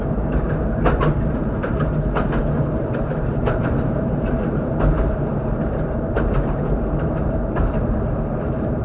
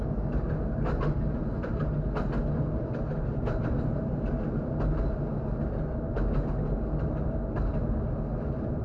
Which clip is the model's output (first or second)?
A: first